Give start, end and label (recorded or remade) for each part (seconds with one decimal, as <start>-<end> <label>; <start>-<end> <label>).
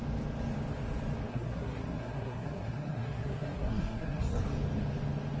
0.0-1.3 recorded; 1.3-4.4 remade; 4.4-5.4 recorded